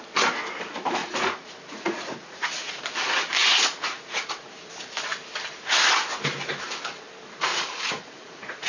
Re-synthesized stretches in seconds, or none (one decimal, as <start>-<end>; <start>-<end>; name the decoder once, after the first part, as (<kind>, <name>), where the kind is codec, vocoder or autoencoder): 1.0-2.8 (vocoder, Vocos); 3.4-4.5; 7.5-8.7

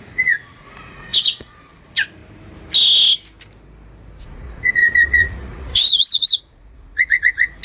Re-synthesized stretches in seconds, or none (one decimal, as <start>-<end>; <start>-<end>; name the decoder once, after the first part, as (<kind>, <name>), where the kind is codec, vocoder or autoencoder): 0.0-2.2 (vocoder, Vocos); 4.2-7.6

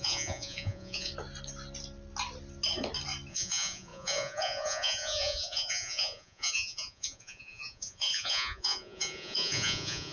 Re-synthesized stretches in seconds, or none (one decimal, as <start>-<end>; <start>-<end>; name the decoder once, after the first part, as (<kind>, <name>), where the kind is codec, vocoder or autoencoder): 0.0-1.1 (vocoder, Vocos); 3.3-10.1

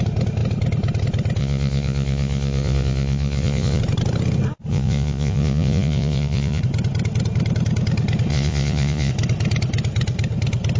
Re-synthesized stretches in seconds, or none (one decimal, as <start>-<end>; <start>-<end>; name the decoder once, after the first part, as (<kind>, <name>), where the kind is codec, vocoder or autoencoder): 1.4-3.8 (vocoder, Vocos); 4.7-6.6; 8.3-9.1

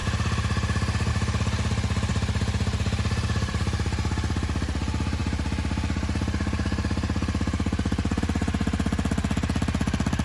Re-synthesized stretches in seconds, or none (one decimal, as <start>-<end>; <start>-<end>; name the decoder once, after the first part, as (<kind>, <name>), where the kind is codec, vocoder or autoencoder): none

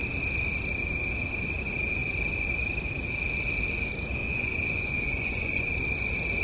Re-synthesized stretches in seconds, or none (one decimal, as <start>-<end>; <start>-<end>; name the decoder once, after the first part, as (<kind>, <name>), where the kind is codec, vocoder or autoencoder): 4.2-5.7 (vocoder, Vocos)